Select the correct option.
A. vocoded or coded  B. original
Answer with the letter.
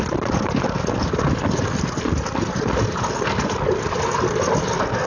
B